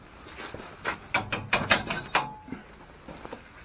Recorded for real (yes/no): yes